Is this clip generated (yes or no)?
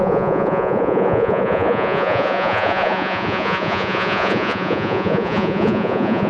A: yes